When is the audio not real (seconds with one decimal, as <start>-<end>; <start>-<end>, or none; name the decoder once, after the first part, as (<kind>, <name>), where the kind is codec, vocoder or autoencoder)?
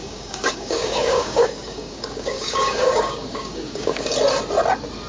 0.0-4.1 (codec, DAC)